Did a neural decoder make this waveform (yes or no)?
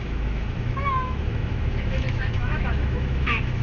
yes